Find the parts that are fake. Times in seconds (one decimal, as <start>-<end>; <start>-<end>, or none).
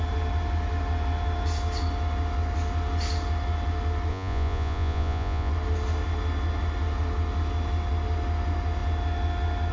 4.1-5.5